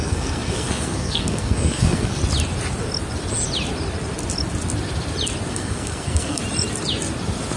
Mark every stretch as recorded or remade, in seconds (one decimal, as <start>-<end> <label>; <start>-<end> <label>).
0.0-2.2 remade; 2.2-5.5 recorded; 5.5-6.4 remade; 6.4-7.6 recorded